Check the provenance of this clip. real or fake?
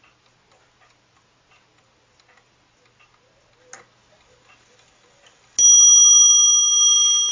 real